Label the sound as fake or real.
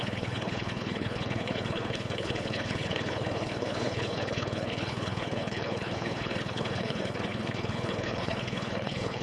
fake